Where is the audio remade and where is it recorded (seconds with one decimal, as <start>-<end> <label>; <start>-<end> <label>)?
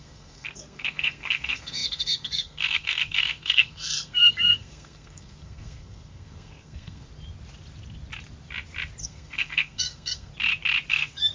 0.0-7.1 remade; 7.1-9.0 recorded; 9.0-10.3 remade; 10.3-10.9 recorded; 10.9-11.3 remade